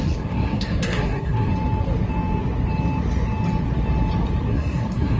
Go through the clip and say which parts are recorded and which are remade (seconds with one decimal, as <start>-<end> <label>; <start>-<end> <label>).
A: 0.0-1.5 remade; 1.5-4.5 recorded; 4.5-5.2 remade

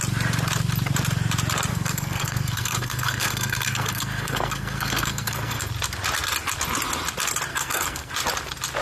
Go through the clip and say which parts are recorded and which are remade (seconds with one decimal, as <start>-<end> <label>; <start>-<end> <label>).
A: 0.0-1.7 recorded; 1.7-5.7 remade; 5.7-7.5 recorded; 7.5-8.1 remade; 8.1-8.8 recorded

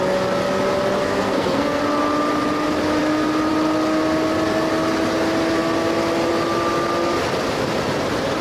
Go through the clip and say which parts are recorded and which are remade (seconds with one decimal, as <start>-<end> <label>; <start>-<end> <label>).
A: 0.0-1.0 recorded; 1.0-1.8 remade; 1.8-8.4 recorded

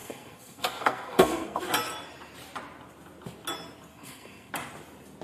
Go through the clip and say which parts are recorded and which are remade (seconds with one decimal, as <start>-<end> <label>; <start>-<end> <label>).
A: 0.0-1.6 remade; 1.6-3.9 recorded; 3.9-4.5 remade; 4.5-5.2 recorded

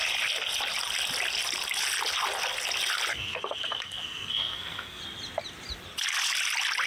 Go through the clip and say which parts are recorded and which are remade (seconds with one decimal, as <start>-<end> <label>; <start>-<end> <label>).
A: 0.0-3.1 recorded; 3.1-5.0 remade; 5.0-6.9 recorded